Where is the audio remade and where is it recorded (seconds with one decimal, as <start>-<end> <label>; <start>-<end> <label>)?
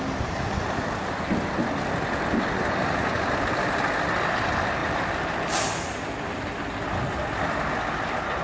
0.0-8.4 recorded